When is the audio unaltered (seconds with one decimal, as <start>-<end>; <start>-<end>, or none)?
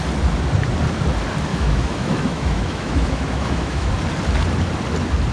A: 0.0-1.5; 3.9-5.3